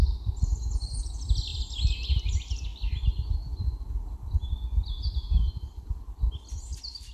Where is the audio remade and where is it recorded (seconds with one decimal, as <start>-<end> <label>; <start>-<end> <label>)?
0.0-7.1 recorded